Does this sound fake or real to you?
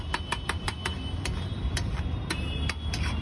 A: real